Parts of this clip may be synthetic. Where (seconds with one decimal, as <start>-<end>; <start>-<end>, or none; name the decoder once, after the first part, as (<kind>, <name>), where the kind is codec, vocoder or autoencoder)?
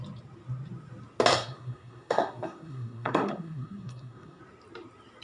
1.3-4.4 (codec, SNAC)